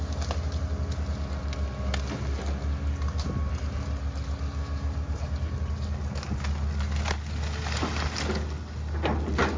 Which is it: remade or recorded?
recorded